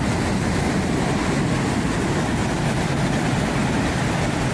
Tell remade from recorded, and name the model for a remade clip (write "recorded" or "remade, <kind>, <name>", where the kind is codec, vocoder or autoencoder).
recorded